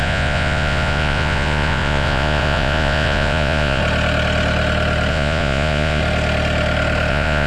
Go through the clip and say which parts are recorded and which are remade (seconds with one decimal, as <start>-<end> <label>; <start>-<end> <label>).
0.0-3.8 remade; 3.8-5.1 recorded; 5.1-6.0 remade; 6.0-7.1 recorded; 7.1-7.5 remade